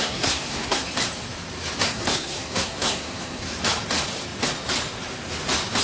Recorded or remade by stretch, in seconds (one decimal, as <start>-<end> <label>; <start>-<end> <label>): 0.0-0.8 remade; 0.8-1.8 recorded; 1.8-3.5 remade; 3.5-5.8 recorded